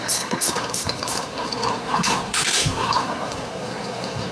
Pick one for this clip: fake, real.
fake